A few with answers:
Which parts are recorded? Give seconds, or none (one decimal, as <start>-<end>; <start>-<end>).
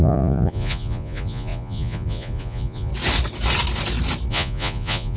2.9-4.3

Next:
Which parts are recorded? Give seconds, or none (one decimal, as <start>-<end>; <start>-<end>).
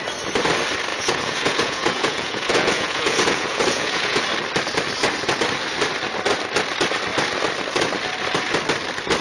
0.0-0.9; 4.2-9.2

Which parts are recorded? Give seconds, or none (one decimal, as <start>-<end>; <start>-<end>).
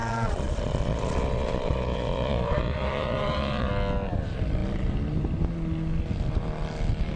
3.7-7.2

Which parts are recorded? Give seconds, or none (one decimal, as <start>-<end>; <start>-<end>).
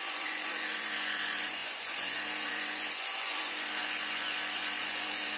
none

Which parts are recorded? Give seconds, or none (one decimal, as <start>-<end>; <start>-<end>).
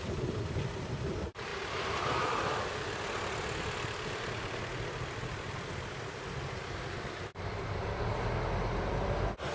0.0-9.5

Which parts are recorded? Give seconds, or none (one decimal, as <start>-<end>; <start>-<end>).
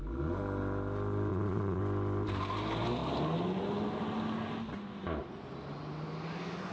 0.0-1.3; 1.8-6.7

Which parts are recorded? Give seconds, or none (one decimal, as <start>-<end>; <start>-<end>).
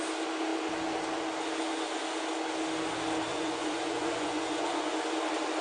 0.0-3.3; 4.9-5.6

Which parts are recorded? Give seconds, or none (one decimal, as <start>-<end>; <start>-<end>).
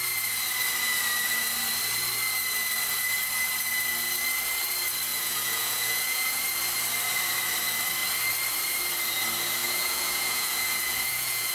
0.0-5.1; 6.4-9.6